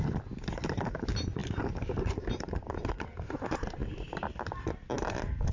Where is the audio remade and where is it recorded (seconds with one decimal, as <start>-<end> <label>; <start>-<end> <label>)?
0.0-5.5 recorded